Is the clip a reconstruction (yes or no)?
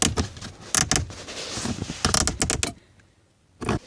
no